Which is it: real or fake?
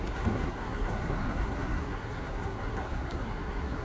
fake